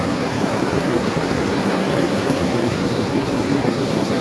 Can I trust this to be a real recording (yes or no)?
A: no